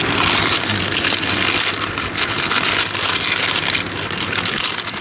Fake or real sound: real